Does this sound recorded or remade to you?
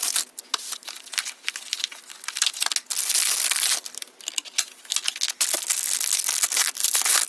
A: recorded